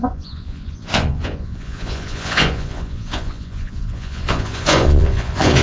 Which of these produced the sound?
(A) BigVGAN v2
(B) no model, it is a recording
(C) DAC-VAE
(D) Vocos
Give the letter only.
D